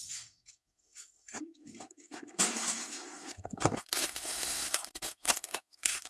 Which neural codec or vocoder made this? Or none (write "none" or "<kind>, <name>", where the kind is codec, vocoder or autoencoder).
codec, SNAC